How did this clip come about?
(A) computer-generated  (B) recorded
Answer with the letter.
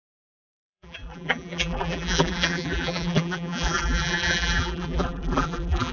A